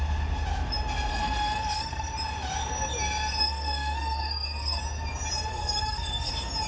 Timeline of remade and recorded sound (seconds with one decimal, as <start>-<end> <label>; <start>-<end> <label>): 0.0-1.1 recorded; 1.1-2.1 remade; 2.1-3.4 recorded; 3.4-4.8 remade; 4.8-5.5 recorded; 5.5-6.3 remade; 6.3-6.7 recorded